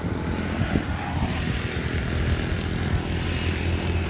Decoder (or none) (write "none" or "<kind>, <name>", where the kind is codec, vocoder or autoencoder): none